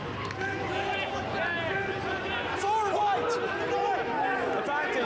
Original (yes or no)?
yes